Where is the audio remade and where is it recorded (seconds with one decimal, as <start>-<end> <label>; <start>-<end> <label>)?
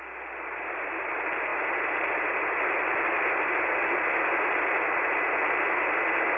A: 0.0-6.4 recorded